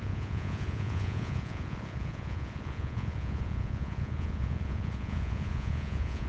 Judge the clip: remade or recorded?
remade